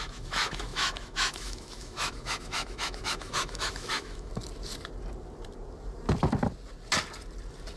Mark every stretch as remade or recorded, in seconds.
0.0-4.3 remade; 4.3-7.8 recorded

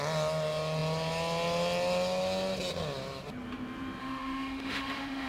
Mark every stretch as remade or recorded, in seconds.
0.0-4.0 recorded; 4.0-5.3 remade

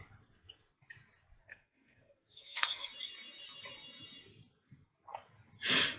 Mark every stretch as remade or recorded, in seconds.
0.0-1.4 recorded; 1.4-2.9 remade; 2.9-6.0 recorded

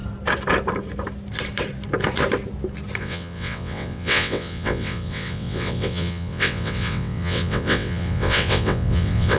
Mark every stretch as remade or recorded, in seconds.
0.0-3.0 recorded; 3.0-9.4 remade